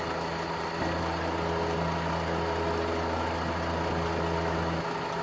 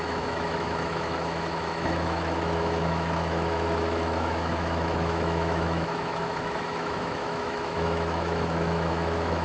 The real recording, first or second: first